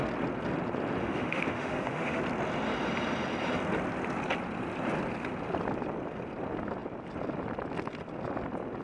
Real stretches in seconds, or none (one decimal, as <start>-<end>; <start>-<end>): 0.0-1.0; 2.2-8.8